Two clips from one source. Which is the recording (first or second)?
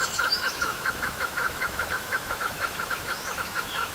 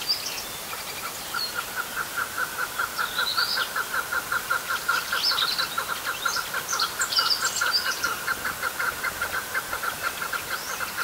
second